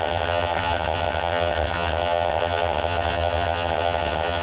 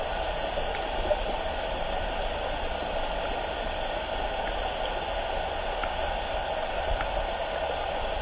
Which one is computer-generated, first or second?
first